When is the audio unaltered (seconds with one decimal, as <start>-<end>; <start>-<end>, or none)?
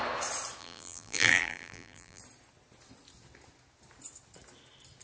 0.0-0.6; 2.2-5.0